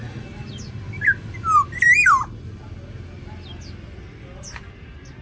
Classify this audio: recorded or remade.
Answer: recorded